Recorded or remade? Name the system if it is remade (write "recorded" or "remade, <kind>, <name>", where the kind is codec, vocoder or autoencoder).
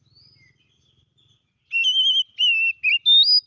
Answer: recorded